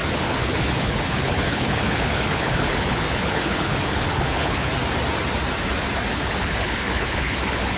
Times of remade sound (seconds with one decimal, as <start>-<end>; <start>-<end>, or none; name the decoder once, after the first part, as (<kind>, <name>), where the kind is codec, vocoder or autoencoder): 0.0-4.7 (codec, HILCodec); 6.1-7.8